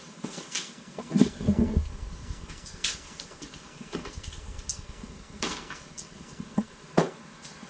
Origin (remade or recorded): remade